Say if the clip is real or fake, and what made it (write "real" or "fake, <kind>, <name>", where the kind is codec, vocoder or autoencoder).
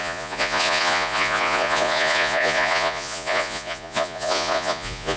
fake, vocoder, Vocos